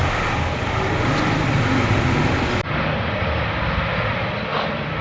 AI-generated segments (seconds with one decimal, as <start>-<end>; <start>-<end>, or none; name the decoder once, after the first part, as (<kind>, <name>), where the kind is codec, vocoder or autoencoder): none